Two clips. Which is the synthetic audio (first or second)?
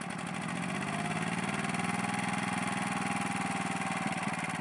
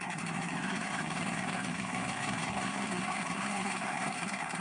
second